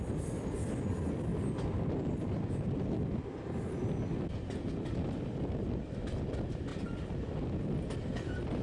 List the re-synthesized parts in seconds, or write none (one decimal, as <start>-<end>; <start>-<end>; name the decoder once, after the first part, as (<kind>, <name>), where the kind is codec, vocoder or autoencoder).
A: none